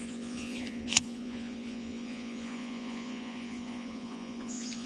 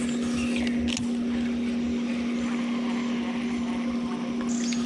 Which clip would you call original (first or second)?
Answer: second